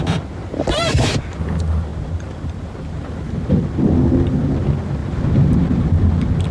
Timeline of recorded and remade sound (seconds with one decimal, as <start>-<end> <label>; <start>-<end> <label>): 0.0-0.4 recorded; 0.4-1.2 remade; 1.2-1.9 recorded; 1.9-2.9 remade; 2.9-5.0 recorded; 5.0-5.7 remade; 5.7-6.5 recorded